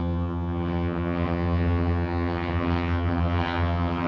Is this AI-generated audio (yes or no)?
yes